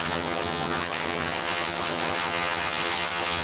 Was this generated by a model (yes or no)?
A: yes